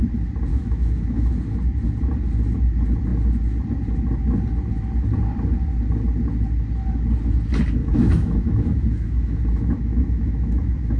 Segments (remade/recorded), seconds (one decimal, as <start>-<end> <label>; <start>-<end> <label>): 0.0-0.5 recorded; 0.5-1.3 remade; 1.3-7.8 recorded; 7.8-11.0 remade

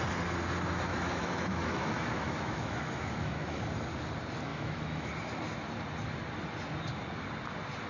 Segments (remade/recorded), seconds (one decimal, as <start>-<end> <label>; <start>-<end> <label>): 0.0-0.9 recorded; 0.9-3.6 remade; 3.6-4.5 recorded; 4.5-5.1 remade; 5.1-7.9 recorded

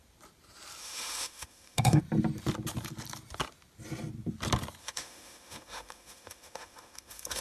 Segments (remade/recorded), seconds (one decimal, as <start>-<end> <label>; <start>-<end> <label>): 0.0-0.8 recorded; 0.8-2.0 remade; 2.0-4.8 recorded; 4.8-7.4 remade

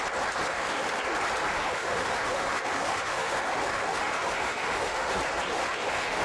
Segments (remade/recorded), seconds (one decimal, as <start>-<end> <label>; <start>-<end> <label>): 0.0-0.5 recorded; 0.5-1.0 remade; 1.0-1.5 recorded; 1.5-5.1 remade; 5.1-5.5 recorded; 5.5-6.2 remade

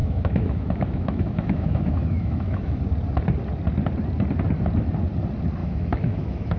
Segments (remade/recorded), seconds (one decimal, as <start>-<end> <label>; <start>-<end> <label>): 0.0-2.8 remade; 2.8-5.6 recorded; 5.6-6.6 remade

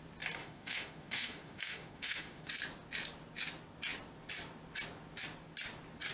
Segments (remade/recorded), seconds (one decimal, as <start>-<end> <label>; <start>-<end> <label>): 0.0-0.4 recorded; 0.4-2.5 remade; 2.5-6.1 recorded

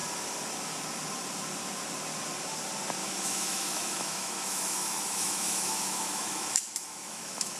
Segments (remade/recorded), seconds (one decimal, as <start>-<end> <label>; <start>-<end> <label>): 0.0-3.0 recorded; 3.0-7.6 remade

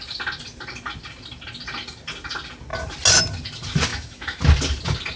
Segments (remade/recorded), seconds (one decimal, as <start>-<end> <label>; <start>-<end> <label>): 0.0-3.9 recorded; 3.9-4.4 remade; 4.4-5.2 recorded